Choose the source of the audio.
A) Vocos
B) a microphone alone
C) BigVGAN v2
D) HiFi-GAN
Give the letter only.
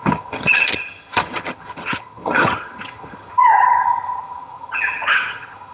D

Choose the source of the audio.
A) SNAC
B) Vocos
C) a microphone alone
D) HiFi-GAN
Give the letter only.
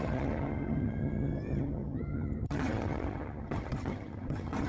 D